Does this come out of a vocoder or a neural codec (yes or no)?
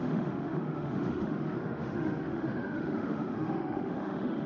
yes